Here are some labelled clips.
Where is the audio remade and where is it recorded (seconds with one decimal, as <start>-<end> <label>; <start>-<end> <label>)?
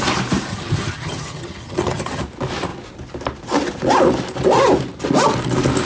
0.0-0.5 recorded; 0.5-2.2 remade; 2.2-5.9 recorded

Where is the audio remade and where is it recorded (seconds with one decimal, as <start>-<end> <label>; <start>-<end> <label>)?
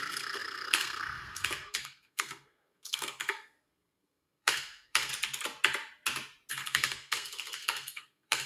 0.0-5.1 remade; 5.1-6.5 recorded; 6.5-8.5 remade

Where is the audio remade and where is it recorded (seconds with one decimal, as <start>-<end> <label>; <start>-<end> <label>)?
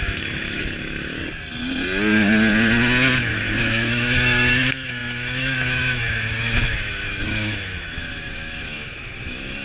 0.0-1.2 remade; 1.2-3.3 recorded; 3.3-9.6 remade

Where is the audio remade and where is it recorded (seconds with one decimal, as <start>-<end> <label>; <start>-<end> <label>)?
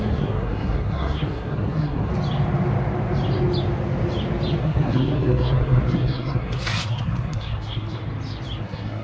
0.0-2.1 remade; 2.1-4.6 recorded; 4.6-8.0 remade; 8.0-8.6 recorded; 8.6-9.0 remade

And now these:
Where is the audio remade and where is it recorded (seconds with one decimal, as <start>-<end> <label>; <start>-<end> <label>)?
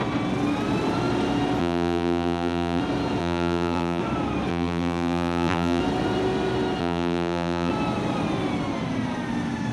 0.0-1.6 recorded; 1.6-2.8 remade; 2.8-3.2 recorded; 3.2-4.0 remade; 4.0-4.5 recorded; 4.5-5.8 remade; 5.8-6.8 recorded; 6.8-7.7 remade; 7.7-9.7 recorded